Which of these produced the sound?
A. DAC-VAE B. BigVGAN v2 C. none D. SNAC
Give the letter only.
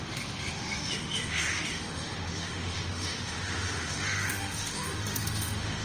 A